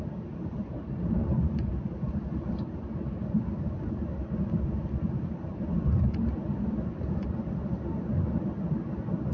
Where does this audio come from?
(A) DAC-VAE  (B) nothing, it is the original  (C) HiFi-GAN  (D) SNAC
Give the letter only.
B